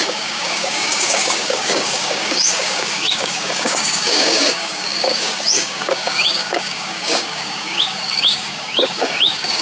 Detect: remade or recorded remade